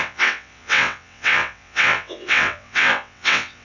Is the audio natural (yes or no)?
no